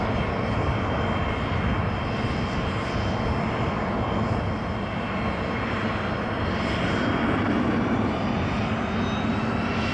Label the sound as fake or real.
real